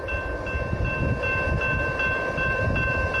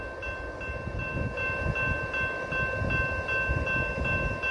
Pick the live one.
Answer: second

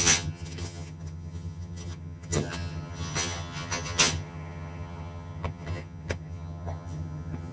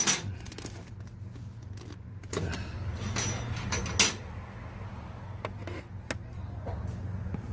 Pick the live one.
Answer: second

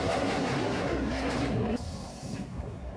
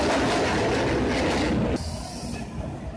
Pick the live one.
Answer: second